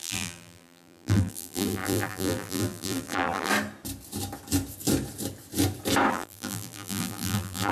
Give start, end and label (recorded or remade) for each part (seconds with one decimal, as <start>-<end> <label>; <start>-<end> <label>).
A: 0.0-3.5 remade; 3.5-6.1 recorded; 6.1-7.7 remade